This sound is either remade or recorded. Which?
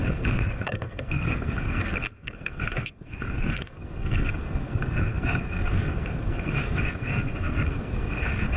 remade